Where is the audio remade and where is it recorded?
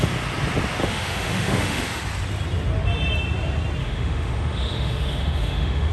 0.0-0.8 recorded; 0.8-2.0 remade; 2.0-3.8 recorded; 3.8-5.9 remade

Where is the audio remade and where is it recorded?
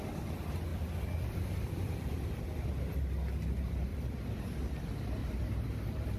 0.0-3.9 recorded; 3.9-4.4 remade; 4.4-5.2 recorded; 5.2-6.2 remade